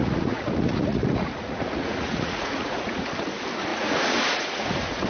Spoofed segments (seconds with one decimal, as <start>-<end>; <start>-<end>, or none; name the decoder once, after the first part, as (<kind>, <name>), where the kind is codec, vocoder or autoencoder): 0.0-3.1 (vocoder, Vocos); 3.7-5.1